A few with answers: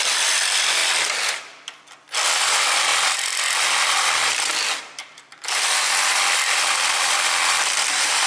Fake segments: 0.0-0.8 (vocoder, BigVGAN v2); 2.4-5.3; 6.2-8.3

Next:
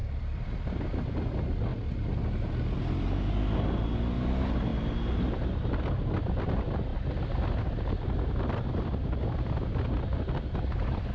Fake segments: 0.0-0.6 (vocoder, BigVGAN v2)

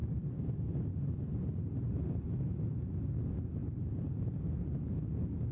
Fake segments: 0.0-3.0 (vocoder, BigVGAN v2); 3.6-4.1

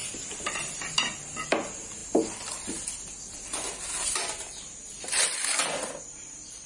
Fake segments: 0.0-0.7 (vocoder, BigVGAN v2)

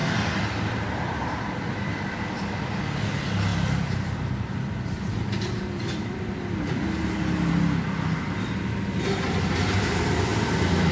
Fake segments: 0.0-2.7 (vocoder, BigVGAN v2); 3.5-6.3; 10.3-10.9